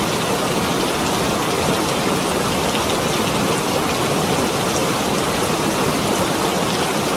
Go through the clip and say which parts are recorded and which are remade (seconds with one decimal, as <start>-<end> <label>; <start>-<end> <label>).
0.0-4.8 recorded; 4.8-6.2 remade; 6.2-7.2 recorded